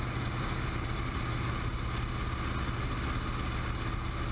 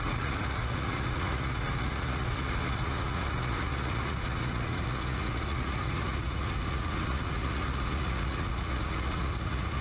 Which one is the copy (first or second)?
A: second